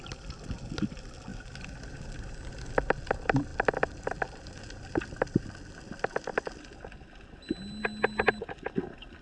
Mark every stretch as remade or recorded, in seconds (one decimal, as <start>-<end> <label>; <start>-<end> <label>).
0.0-9.2 recorded